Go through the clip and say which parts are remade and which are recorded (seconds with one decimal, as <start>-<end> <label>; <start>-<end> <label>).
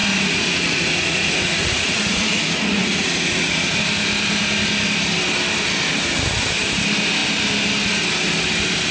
0.0-3.8 remade; 3.8-8.9 recorded